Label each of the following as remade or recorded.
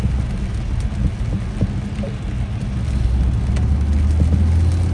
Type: recorded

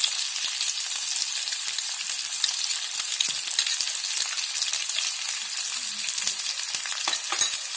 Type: recorded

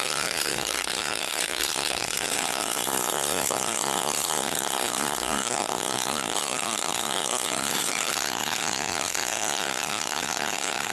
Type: remade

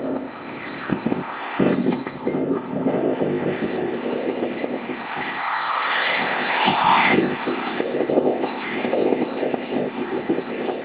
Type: remade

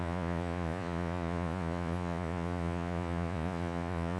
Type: remade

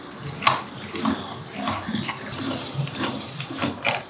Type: recorded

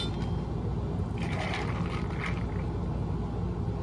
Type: recorded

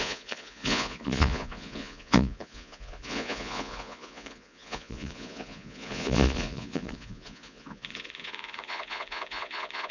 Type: remade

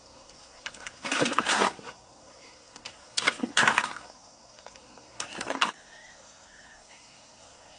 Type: remade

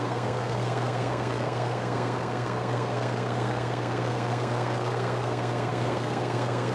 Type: remade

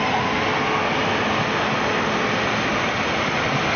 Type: recorded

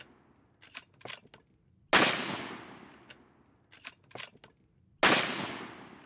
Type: recorded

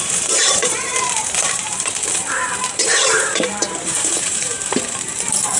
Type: remade